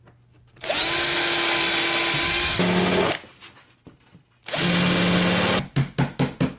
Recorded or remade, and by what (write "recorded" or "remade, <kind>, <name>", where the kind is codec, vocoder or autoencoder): recorded